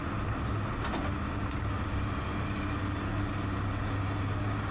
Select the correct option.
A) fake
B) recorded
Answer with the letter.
B